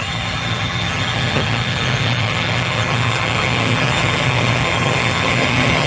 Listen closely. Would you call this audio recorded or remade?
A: remade